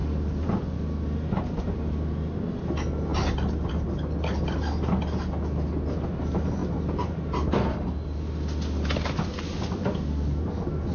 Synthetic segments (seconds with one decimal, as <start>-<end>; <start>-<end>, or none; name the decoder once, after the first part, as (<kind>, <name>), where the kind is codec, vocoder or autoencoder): none